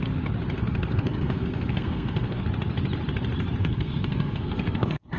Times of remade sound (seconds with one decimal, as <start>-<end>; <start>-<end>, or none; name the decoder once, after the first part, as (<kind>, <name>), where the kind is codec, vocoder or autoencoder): 0.6-2.4 (codec, SNAC); 3.6-5.2